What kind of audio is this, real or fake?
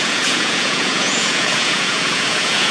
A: fake